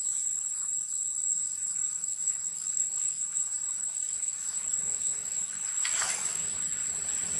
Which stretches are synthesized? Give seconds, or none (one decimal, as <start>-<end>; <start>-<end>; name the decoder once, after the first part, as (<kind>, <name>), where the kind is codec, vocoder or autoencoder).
1.2-5.6 (codec, DAC); 6.1-6.6